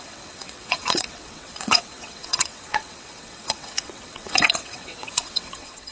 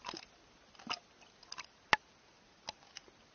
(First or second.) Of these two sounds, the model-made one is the first